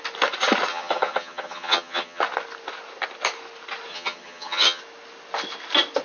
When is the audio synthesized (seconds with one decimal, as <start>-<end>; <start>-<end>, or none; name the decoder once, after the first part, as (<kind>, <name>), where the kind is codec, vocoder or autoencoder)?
0.7-2.2 (vocoder, HiFi-GAN); 3.9-4.8